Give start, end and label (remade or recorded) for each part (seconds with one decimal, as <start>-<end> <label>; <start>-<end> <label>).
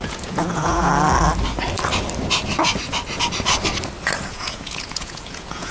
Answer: 0.0-0.9 remade; 0.9-4.3 recorded; 4.3-5.7 remade